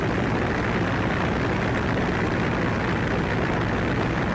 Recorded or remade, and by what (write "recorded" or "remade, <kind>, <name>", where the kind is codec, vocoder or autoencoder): recorded